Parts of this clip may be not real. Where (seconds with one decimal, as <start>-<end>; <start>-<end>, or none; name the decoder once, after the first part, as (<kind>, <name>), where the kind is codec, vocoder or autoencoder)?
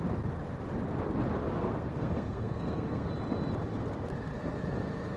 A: 1.5-3.1 (codec, SNAC)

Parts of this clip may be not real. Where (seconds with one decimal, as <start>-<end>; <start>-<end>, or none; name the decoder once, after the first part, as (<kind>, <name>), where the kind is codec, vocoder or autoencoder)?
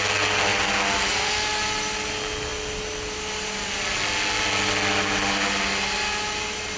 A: none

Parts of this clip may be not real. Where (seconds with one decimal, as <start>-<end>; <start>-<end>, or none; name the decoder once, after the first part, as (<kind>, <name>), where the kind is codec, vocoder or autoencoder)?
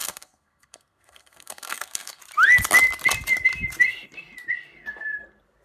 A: 0.0-2.2 (codec, SNAC)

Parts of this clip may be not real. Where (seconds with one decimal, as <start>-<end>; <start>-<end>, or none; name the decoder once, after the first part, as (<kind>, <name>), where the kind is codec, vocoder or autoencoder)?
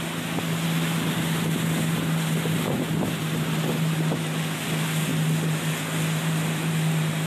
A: none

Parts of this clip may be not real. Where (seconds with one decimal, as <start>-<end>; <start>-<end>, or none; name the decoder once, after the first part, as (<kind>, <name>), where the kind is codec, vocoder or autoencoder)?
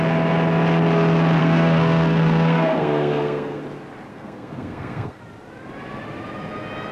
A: 1.4-3.6 (codec, SNAC); 4.1-5.2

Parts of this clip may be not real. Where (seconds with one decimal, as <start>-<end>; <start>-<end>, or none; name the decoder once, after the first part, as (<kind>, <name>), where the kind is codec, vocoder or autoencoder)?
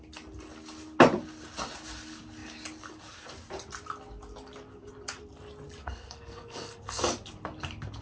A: 5.8-7.0 (codec, SNAC)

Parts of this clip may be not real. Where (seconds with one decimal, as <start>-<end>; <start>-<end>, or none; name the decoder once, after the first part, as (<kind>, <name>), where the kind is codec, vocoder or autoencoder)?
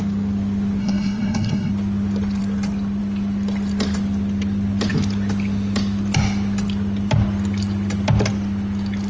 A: 0.8-1.7 (codec, SNAC)